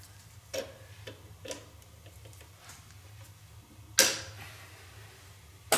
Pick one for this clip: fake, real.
real